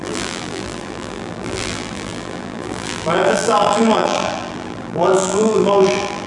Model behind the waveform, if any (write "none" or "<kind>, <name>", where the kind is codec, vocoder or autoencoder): vocoder, BigVGAN v2